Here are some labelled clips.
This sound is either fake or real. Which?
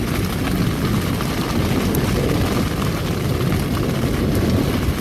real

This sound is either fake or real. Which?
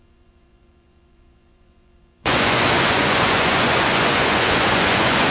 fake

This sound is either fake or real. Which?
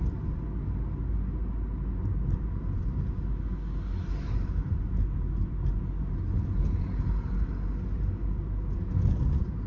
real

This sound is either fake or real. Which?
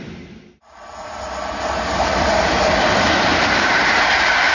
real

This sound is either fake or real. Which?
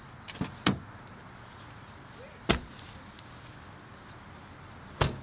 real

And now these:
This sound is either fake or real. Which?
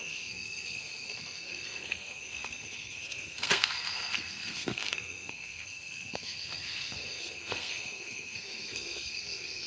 fake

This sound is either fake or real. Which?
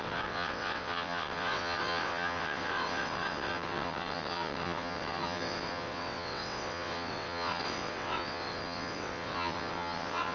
fake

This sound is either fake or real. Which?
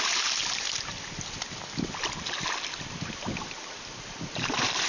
real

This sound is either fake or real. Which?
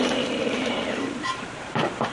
fake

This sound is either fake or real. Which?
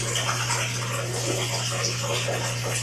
real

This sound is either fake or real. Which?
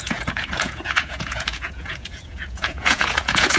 fake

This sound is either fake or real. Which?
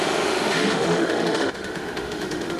fake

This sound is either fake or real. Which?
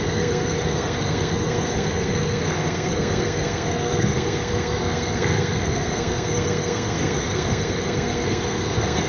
fake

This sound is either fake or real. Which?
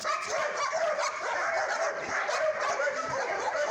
fake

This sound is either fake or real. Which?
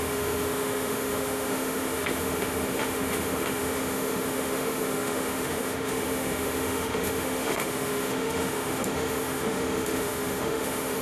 fake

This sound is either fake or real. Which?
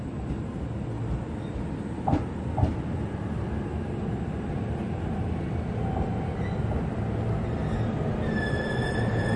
real